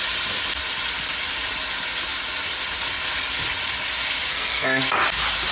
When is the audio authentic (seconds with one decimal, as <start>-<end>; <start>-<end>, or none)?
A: 0.0-4.3; 4.8-5.5